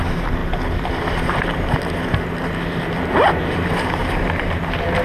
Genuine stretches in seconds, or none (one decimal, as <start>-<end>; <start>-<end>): 0.0-4.0; 4.6-5.0